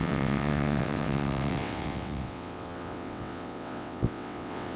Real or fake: fake